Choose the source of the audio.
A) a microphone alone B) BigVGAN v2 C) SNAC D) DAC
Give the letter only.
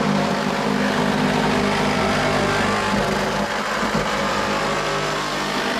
A